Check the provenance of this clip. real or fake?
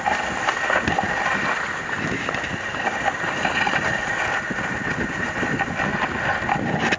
real